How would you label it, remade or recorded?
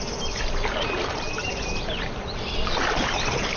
recorded